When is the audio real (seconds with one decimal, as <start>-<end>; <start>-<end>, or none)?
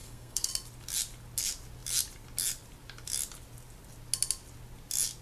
0.5-5.2